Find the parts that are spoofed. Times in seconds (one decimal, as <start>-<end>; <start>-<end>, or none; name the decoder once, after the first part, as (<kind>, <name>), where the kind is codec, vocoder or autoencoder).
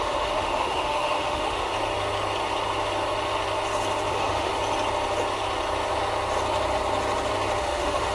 0.0-1.7 (autoencoder, DAC-VAE); 4.1-4.5; 7.6-8.1